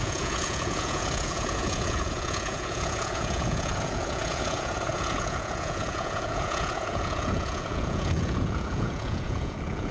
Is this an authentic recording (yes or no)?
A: no